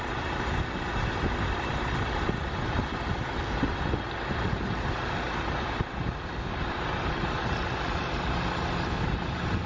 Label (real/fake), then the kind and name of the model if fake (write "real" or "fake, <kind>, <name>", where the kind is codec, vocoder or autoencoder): real